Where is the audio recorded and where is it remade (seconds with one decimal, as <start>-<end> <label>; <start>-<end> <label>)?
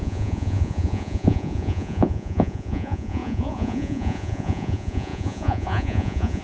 0.0-6.4 remade